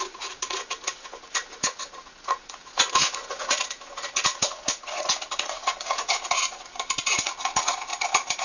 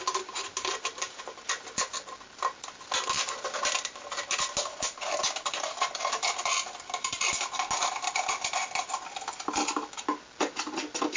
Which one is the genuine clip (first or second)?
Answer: second